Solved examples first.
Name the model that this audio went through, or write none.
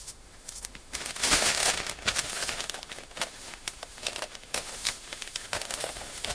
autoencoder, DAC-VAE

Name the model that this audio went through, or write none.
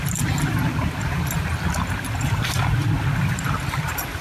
none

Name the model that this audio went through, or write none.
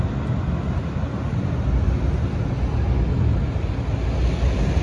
none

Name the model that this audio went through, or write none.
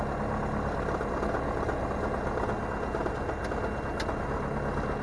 none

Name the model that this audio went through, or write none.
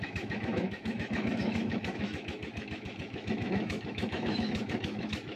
autoencoder, DAC-VAE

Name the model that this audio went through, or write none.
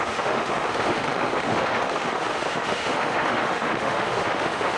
autoencoder, DAC-VAE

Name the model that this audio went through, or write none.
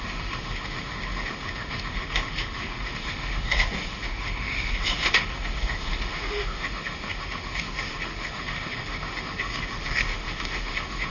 autoencoder, DAC-VAE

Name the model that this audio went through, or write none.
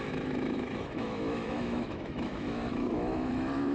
autoencoder, DAC-VAE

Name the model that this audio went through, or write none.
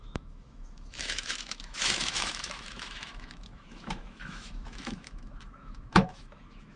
autoencoder, DAC-VAE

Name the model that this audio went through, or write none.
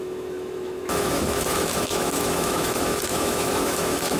autoencoder, DAC-VAE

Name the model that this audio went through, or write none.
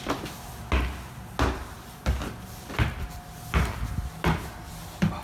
none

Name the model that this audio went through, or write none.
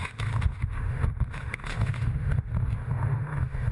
autoencoder, DAC-VAE